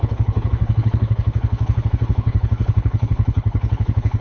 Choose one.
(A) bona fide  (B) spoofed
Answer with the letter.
B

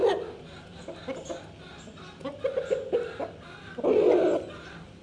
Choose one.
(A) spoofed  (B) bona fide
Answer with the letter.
B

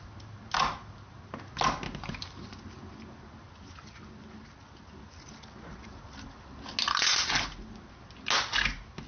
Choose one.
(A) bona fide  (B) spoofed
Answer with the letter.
A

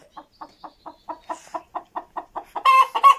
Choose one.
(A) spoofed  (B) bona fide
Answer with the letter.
B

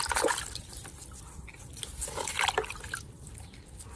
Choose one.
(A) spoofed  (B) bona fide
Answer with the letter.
B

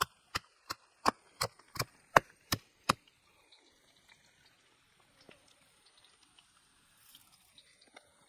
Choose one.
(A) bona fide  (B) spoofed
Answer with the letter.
A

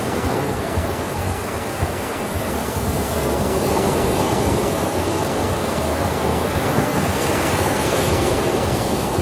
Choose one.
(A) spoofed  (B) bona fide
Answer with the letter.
A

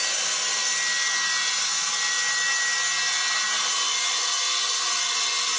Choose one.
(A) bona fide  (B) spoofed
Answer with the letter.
A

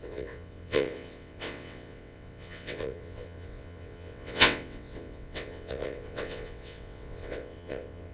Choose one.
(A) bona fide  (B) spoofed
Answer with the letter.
B